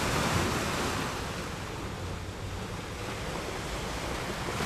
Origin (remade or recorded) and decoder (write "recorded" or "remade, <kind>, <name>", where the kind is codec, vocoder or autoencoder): recorded